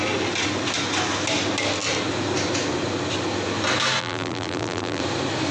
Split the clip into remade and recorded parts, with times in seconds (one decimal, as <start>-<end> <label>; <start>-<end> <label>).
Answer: 0.0-4.0 recorded; 4.0-5.0 remade; 5.0-5.5 recorded